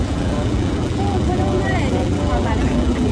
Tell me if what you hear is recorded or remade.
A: remade